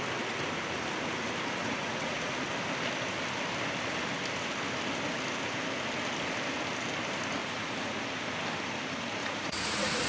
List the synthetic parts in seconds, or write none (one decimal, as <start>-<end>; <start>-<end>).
1.6-2.3; 7.4-8.0; 9.2-10.1